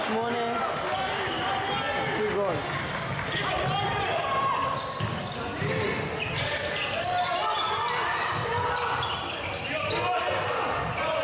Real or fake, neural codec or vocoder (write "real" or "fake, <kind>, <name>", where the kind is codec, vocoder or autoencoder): real